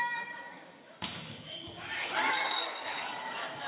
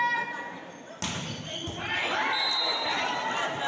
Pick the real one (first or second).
second